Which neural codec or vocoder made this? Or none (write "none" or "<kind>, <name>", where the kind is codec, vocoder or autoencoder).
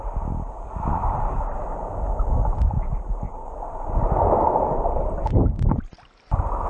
none